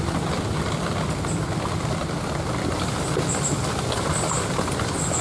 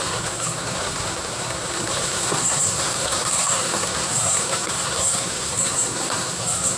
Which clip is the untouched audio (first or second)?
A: first